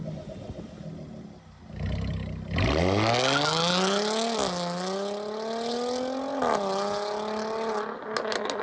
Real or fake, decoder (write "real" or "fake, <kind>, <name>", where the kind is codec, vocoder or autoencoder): real